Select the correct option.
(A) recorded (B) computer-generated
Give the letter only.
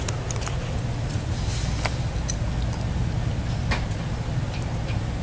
A